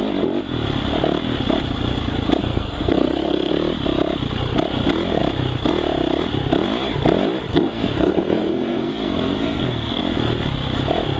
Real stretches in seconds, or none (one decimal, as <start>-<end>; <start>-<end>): 0.0-2.4; 3.5-7.5; 10.0-11.2